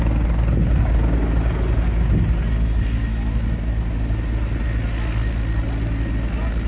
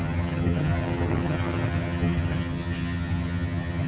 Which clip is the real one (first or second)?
first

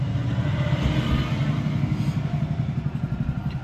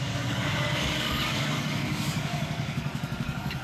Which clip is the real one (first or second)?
first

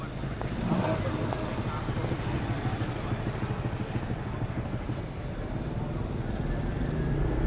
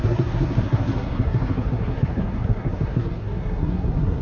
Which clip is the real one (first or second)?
first